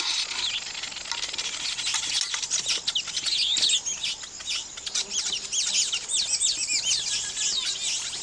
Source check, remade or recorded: recorded